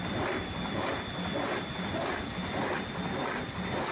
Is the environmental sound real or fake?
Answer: real